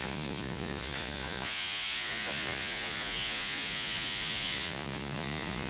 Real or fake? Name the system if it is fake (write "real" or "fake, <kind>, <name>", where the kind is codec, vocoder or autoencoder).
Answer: fake, vocoder, Vocos